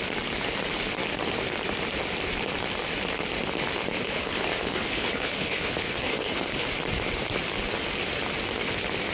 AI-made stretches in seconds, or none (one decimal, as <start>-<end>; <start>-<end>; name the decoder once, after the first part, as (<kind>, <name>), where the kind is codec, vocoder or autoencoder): 3.9-6.7 (codec, HILCodec)